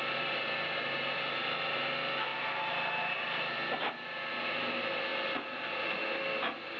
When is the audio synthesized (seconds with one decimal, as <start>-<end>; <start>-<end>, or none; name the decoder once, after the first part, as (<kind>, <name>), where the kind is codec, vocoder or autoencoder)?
none